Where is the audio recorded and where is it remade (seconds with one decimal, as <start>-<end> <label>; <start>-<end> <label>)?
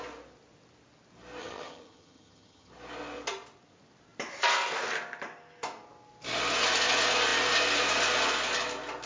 0.0-1.4 recorded; 1.4-2.7 remade; 2.7-9.1 recorded